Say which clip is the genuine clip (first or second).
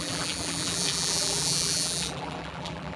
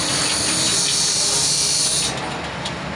second